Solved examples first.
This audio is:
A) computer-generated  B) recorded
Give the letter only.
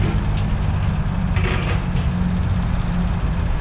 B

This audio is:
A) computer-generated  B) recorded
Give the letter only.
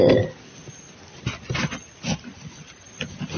B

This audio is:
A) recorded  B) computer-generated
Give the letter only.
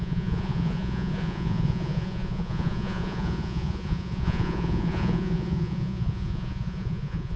B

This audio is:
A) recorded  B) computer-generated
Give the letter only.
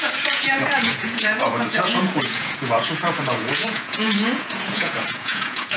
B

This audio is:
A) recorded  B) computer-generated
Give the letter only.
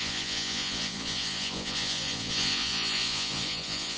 B